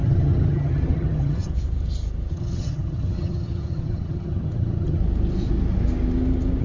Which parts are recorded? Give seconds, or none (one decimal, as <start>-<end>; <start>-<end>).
1.5-2.3; 5.0-6.6